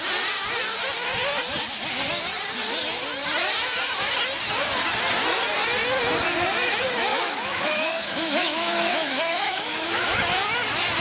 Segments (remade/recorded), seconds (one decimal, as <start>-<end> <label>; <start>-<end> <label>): 0.0-7.1 recorded; 7.1-10.2 remade; 10.2-11.0 recorded